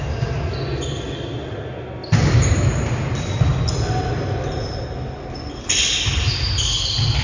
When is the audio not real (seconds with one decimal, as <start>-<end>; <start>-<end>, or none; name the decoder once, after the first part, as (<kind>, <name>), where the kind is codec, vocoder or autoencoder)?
none